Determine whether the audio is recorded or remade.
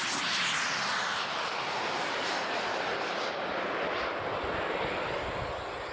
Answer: recorded